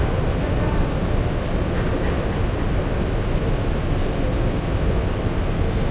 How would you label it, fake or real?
real